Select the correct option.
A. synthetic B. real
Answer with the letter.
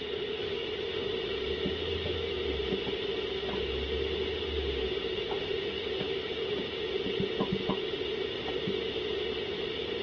B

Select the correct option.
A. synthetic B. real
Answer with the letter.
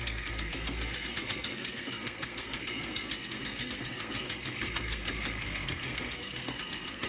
A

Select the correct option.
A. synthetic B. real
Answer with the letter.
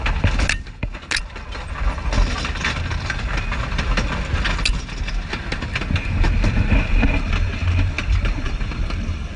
B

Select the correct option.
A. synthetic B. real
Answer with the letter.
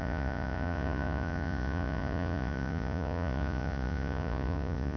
A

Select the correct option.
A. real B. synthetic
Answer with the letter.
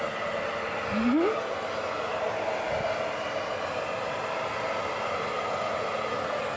A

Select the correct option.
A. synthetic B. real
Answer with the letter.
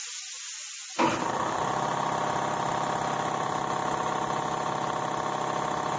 B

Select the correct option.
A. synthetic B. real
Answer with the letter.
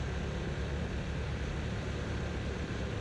B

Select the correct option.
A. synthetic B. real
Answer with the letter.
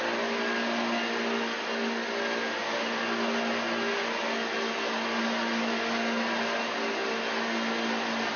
B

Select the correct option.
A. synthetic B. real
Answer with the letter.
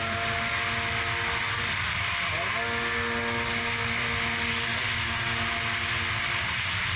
B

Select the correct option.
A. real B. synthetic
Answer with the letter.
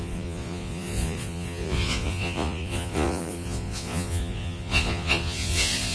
B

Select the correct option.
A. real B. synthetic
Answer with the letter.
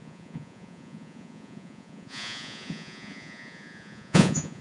B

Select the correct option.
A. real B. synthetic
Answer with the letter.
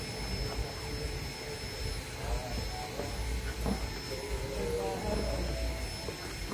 A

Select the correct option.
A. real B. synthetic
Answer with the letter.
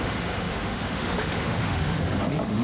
B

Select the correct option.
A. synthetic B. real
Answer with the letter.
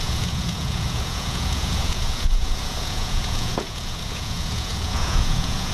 A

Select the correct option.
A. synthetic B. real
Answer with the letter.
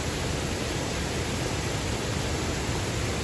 B